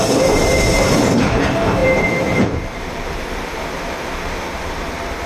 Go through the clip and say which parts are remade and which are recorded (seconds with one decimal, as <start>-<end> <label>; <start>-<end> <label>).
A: 0.0-5.3 remade